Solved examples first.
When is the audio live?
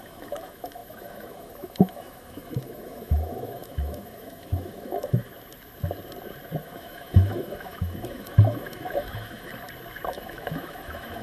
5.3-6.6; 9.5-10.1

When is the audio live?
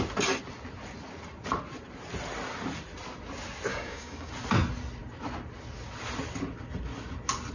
0.0-3.7; 4.3-7.5